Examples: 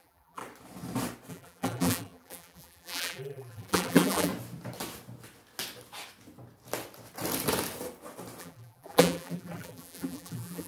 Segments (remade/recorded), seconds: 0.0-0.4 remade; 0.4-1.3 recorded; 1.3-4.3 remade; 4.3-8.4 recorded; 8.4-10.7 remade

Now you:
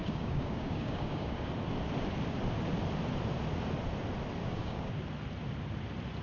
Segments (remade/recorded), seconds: 0.0-1.5 remade; 1.5-4.4 recorded; 4.4-4.9 remade; 4.9-6.2 recorded

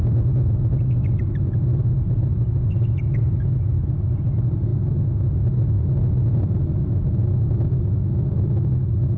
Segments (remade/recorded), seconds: 0.0-9.2 recorded

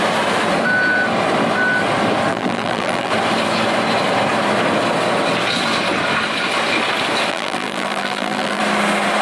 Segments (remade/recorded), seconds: 0.0-2.3 recorded; 2.3-3.1 remade; 3.1-7.3 recorded; 7.3-8.6 remade; 8.6-9.2 recorded